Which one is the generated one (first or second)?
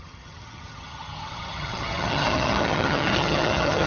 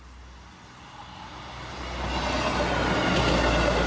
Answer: first